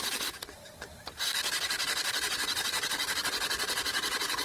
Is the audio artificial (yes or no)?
no